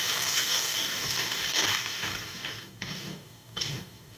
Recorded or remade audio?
remade